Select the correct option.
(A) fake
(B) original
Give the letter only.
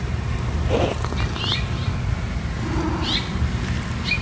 B